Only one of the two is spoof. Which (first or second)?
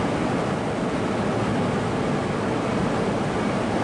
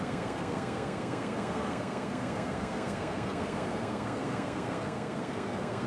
second